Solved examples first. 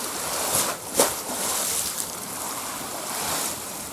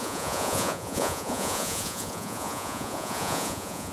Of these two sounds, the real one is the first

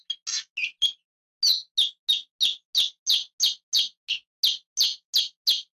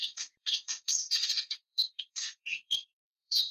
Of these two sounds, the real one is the first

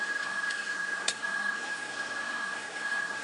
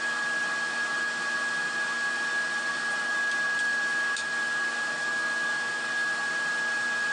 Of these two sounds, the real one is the second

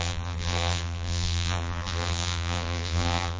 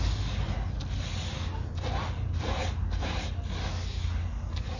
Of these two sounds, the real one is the second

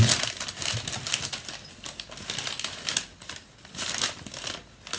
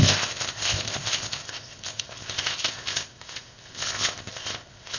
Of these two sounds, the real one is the first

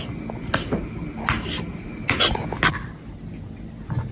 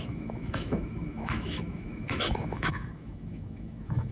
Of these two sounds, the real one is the first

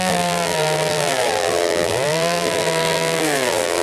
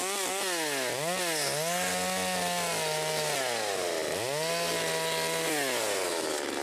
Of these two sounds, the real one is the second